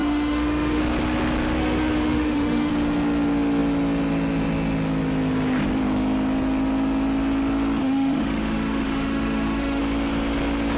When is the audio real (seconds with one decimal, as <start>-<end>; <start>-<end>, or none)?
0.8-1.6; 2.7-7.8; 9.8-10.8